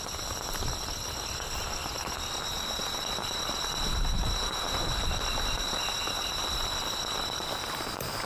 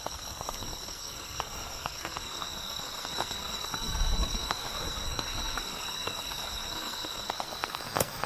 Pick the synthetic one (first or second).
second